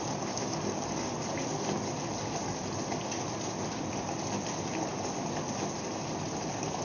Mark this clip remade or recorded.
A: recorded